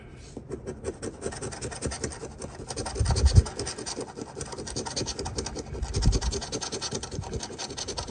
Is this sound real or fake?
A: real